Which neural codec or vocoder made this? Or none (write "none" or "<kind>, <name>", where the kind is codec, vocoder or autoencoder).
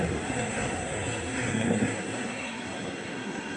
codec, SNAC